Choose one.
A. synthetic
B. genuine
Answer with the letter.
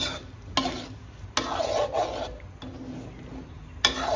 B